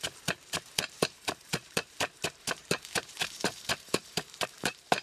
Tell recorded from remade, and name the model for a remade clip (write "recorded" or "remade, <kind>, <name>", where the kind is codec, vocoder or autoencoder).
remade, vocoder, BigVGAN v2